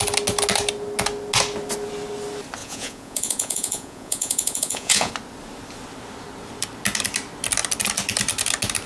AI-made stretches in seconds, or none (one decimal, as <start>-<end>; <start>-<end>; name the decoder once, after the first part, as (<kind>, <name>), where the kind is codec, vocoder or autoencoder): 2.6-5.1 (vocoder, Vocos)